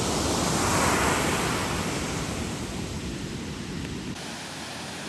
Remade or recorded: recorded